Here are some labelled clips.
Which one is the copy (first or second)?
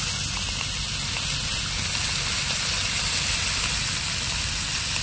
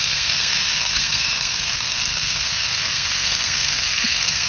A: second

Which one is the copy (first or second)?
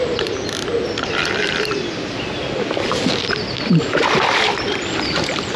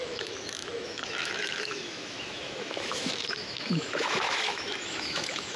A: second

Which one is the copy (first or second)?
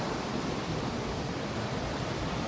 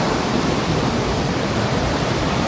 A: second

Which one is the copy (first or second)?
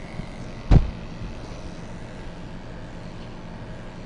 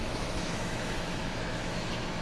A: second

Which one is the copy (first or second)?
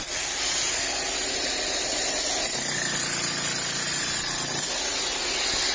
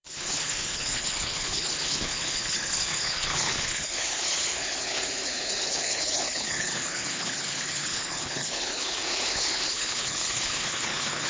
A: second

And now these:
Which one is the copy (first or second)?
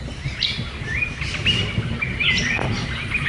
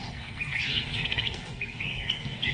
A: second